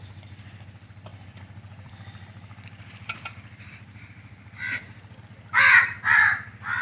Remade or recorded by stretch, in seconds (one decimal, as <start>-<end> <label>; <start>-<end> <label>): 0.0-1.1 recorded; 1.1-5.2 remade; 5.2-6.8 recorded